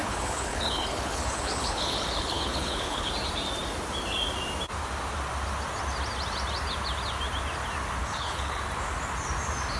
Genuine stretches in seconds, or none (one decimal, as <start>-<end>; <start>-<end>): 3.1-8.0; 8.6-9.8